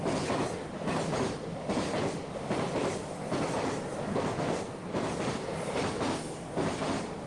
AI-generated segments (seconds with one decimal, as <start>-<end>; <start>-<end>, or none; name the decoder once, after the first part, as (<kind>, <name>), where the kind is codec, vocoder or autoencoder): 4.1-4.9 (codec, SNAC)